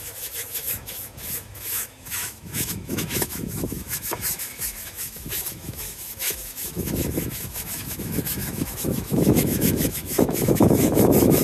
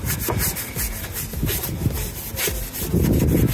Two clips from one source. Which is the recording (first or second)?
second